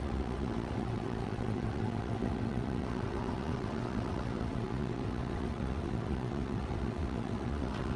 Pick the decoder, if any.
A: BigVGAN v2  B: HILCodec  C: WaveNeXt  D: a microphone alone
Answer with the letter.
C